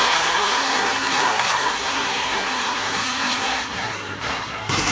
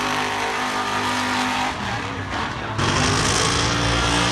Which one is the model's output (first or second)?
first